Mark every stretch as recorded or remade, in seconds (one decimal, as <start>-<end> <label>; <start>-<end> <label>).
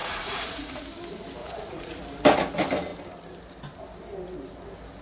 0.0-0.8 remade; 0.8-1.4 recorded; 1.4-2.0 remade; 2.0-5.0 recorded